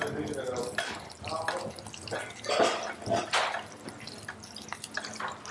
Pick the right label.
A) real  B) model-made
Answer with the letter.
A